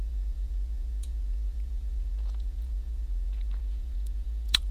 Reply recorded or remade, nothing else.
remade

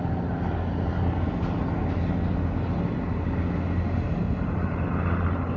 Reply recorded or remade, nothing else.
recorded